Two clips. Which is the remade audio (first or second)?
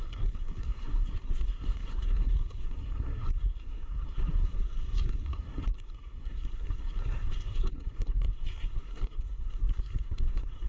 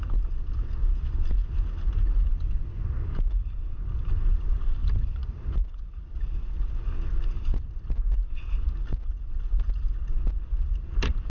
first